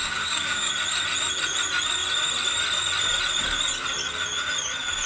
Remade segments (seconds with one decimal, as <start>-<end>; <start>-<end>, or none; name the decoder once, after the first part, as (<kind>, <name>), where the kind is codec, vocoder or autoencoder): 0.0-0.7 (codec, DAC)